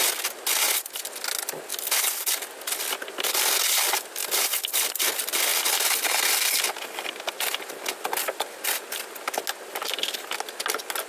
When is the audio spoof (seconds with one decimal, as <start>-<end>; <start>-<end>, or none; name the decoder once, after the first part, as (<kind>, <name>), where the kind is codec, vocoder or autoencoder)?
4.2-4.8 (vocoder, BigVGAN v2)